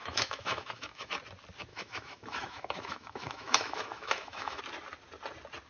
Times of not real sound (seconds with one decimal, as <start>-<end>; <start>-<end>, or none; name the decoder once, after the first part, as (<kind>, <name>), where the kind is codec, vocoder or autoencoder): 0.0-1.1 (autoencoder, DAC-VAE); 1.7-4.6